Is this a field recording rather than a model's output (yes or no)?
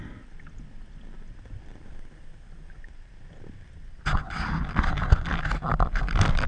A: yes